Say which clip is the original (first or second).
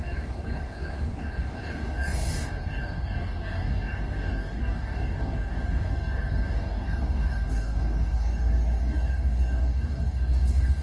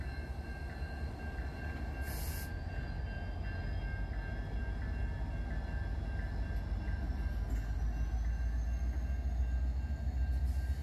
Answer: second